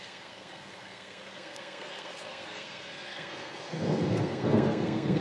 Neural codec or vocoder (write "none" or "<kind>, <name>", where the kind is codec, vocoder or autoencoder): codec, SNAC